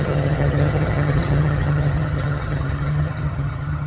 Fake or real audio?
fake